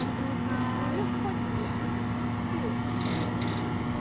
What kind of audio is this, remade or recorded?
recorded